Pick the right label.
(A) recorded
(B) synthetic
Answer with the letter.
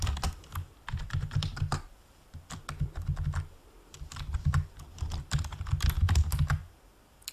B